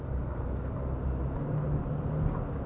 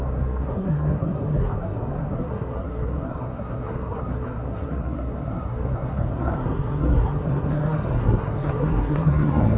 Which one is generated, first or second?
second